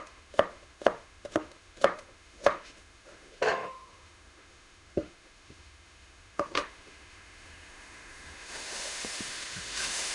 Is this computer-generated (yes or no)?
yes